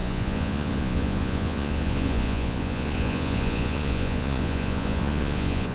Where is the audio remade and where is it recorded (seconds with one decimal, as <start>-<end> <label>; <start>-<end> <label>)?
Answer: 0.0-5.7 remade